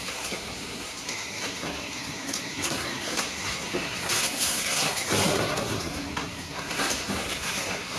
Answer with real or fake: fake